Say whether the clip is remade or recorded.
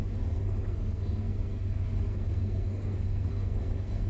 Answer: remade